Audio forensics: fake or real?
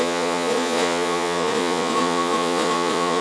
fake